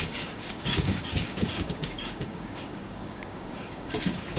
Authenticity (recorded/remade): remade